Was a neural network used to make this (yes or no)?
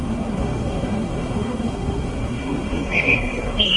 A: yes